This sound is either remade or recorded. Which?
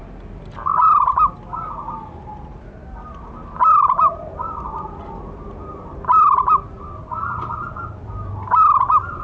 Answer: recorded